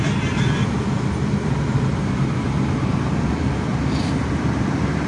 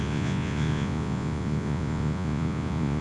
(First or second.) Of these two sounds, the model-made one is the second